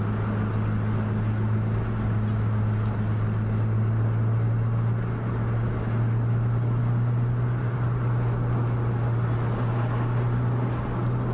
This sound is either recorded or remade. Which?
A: recorded